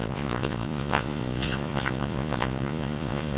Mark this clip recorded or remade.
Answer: remade